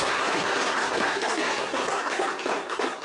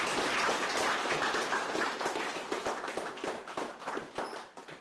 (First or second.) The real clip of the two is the second